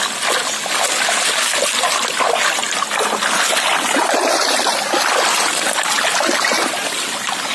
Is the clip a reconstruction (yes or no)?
no